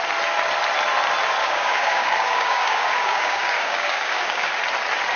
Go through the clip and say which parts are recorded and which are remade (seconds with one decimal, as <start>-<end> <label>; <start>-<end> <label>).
0.0-1.4 recorded; 1.4-4.5 remade; 4.5-5.2 recorded